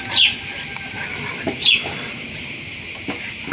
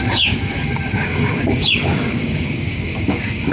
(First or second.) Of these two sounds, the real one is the first